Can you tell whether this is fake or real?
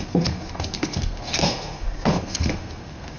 fake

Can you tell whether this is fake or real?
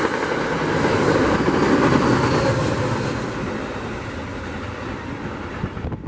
real